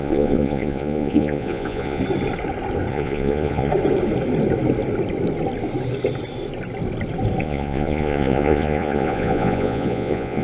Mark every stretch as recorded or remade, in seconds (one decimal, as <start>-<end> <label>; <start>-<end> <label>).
0.0-2.0 remade; 2.0-2.9 recorded; 2.9-3.7 remade; 3.7-7.4 recorded; 7.4-10.4 remade